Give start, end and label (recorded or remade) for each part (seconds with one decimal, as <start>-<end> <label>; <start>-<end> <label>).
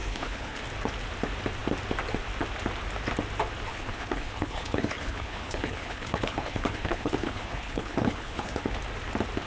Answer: 0.0-0.6 remade; 0.6-3.7 recorded; 3.7-8.7 remade; 8.7-9.5 recorded